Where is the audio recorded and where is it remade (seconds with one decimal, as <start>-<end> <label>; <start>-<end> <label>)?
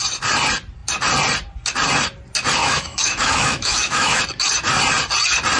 0.0-2.6 recorded; 2.6-4.2 remade; 4.2-5.6 recorded